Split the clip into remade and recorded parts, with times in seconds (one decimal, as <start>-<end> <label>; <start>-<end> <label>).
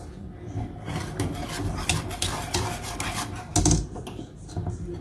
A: 0.0-5.0 recorded